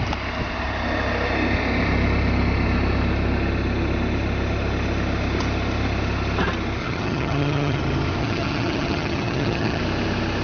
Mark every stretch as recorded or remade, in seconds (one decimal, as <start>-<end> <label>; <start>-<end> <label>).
0.0-6.8 recorded; 6.8-7.8 remade; 7.8-8.2 recorded; 8.2-9.8 remade; 9.8-10.4 recorded